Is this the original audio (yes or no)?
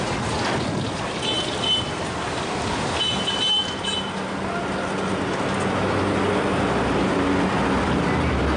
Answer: yes